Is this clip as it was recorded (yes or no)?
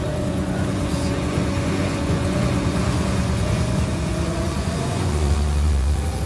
no